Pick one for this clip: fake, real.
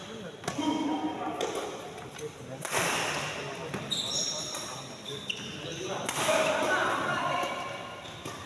real